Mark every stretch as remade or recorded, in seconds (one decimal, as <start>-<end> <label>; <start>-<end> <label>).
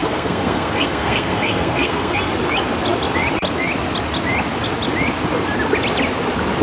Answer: 0.0-2.3 remade; 2.3-6.6 recorded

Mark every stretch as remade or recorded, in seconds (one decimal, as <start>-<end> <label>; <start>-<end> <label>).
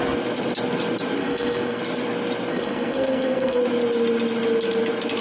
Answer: 0.0-1.2 recorded; 1.2-1.8 remade; 1.8-2.5 recorded; 2.5-3.6 remade; 3.6-5.2 recorded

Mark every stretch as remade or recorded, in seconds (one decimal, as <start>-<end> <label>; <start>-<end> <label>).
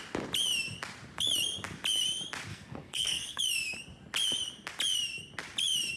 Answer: 0.0-2.5 recorded; 2.5-3.4 remade; 3.4-6.0 recorded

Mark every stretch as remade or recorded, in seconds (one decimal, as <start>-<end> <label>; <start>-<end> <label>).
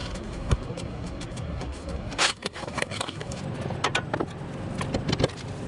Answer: 0.0-3.4 remade; 3.4-5.7 recorded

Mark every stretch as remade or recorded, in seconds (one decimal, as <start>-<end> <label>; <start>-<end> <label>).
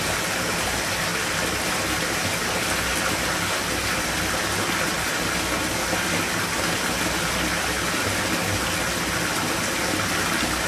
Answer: 0.0-10.7 recorded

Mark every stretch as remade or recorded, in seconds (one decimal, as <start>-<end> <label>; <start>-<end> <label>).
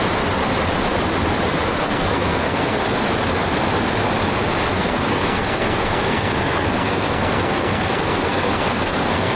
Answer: 0.0-1.8 recorded; 1.8-2.8 remade; 2.8-4.7 recorded; 4.7-9.4 remade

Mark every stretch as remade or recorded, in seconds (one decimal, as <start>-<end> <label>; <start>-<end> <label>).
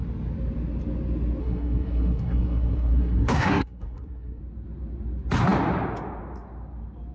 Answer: 0.0-1.4 recorded; 1.4-4.4 remade; 4.4-7.1 recorded